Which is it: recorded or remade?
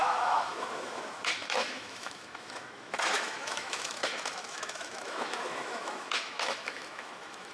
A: remade